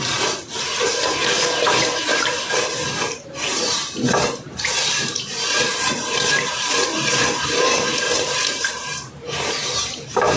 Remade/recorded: remade